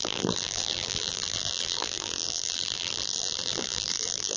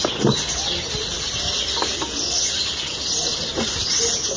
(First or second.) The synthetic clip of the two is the first